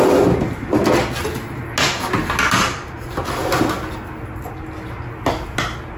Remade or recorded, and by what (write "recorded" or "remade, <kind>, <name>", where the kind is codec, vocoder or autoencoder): recorded